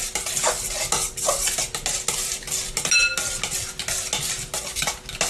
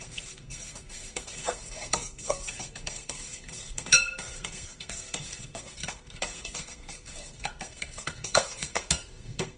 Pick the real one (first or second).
first